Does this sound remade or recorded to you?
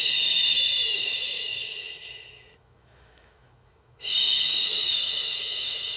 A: remade